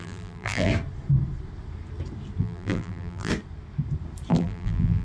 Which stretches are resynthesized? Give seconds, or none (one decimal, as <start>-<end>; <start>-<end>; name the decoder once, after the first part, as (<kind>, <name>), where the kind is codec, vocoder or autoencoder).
0.0-0.7 (vocoder, BigVGAN v2); 2.4-3.3; 4.3-5.0